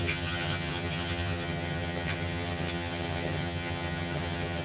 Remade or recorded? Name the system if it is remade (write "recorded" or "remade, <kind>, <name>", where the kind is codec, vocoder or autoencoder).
remade, vocoder, HiFi-GAN